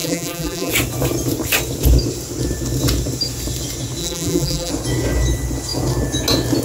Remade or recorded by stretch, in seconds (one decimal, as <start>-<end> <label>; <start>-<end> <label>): 0.0-0.7 remade; 0.7-4.0 recorded; 4.0-4.7 remade; 4.7-6.6 recorded